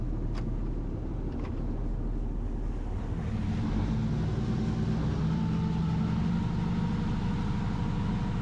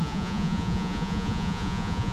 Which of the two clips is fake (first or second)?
second